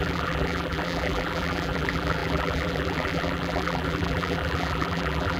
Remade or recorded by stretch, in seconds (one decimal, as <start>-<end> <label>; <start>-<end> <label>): 0.0-5.4 remade